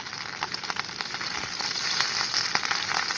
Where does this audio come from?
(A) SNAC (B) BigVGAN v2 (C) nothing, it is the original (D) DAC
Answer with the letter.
C